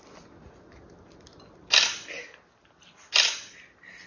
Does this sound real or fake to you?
real